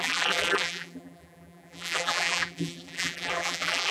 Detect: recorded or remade remade